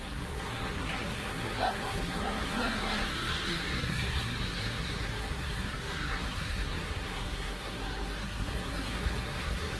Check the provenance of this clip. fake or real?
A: fake